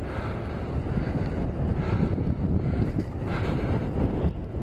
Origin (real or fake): real